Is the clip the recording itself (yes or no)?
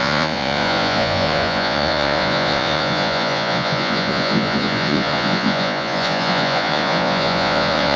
no